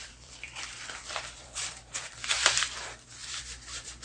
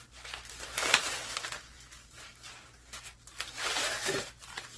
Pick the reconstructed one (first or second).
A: first